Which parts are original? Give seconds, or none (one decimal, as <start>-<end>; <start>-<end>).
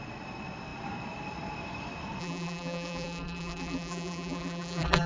0.0-2.2